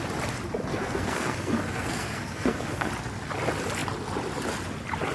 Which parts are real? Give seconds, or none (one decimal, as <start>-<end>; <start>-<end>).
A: 0.0-0.7; 2.9-5.1